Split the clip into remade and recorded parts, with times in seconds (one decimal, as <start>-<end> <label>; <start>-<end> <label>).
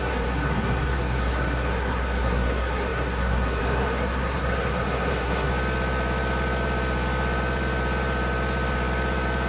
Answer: 0.0-5.5 remade; 5.5-9.5 recorded